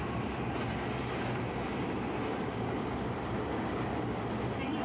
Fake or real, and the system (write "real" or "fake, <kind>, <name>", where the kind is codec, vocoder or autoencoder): real